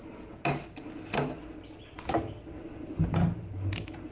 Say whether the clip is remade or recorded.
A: recorded